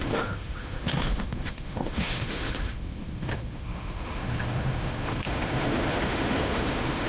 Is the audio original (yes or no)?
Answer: no